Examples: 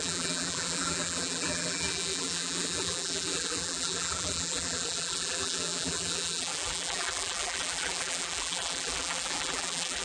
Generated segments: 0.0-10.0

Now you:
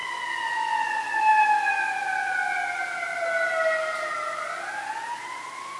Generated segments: none

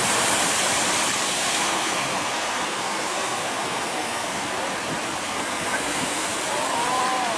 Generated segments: 1.3-4.5; 5.2-6.4

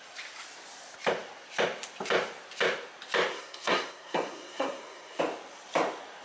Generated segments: 3.3-5.2

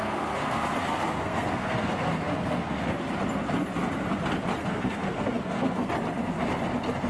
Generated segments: 0.0-3.0; 4.6-5.9

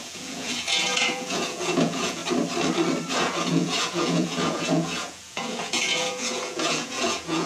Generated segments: 0.0-2.2; 3.1-7.5